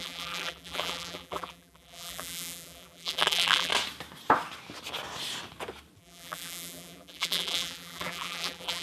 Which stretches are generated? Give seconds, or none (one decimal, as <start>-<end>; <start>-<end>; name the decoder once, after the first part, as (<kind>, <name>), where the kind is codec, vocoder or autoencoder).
0.0-3.7 (vocoder, BigVGAN v2); 6.0-8.8